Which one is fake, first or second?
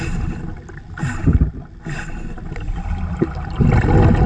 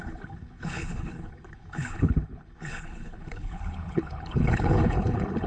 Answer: second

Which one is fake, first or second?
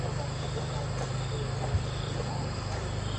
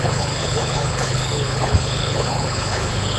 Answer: second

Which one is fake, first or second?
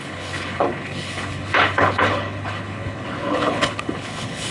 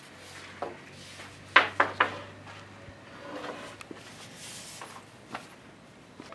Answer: first